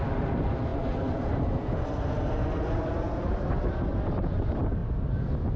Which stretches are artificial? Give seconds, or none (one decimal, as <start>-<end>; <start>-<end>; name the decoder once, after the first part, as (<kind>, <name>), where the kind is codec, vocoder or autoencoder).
none